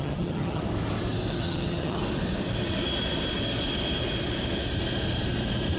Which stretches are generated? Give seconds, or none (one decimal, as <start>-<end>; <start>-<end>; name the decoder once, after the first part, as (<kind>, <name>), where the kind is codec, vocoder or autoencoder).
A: 0.0-0.6 (vocoder, HiFi-GAN); 1.3-2.0